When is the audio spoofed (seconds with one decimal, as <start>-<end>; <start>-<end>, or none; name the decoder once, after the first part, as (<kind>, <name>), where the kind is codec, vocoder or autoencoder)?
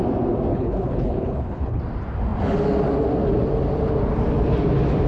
0.5-1.8 (codec, HILCodec)